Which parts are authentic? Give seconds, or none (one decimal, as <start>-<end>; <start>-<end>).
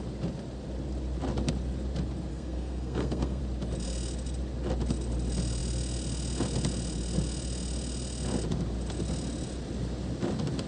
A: 0.0-2.3; 3.4-10.7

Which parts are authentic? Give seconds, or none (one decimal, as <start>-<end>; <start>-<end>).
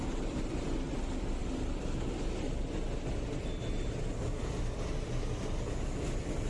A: 0.0-6.5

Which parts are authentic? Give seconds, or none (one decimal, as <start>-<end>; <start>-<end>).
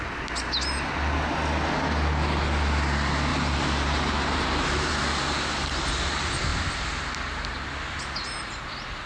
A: 0.0-3.3; 4.9-9.1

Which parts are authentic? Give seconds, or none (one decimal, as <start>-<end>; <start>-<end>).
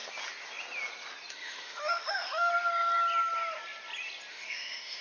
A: 0.0-1.3; 2.5-4.3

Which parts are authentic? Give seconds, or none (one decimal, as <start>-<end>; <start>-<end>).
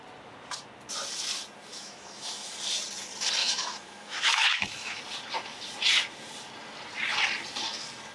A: 0.0-1.7; 2.5-3.4; 5.0-8.1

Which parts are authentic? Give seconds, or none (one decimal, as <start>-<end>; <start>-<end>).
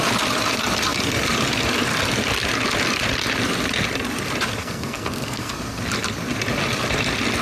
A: 0.0-4.6; 5.8-7.4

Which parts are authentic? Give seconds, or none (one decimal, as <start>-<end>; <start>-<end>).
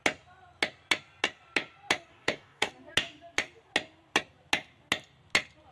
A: 0.0-2.1; 2.7-5.7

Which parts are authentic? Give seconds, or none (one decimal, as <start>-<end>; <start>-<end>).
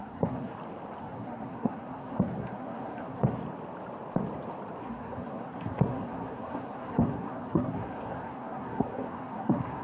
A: 0.5-1.0; 3.4-4.8